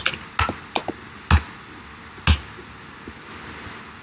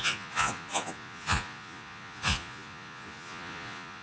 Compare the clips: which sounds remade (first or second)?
second